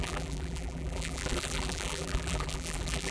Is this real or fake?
fake